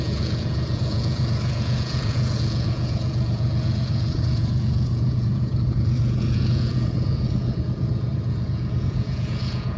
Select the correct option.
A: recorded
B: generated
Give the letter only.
B